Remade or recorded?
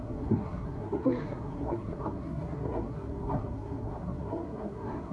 remade